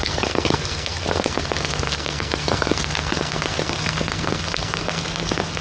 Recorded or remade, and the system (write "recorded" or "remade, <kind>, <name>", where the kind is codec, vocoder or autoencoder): remade, codec, SNAC